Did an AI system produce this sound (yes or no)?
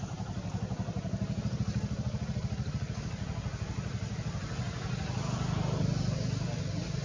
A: no